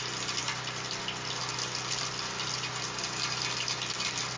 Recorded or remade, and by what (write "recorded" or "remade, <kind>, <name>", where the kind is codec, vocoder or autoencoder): recorded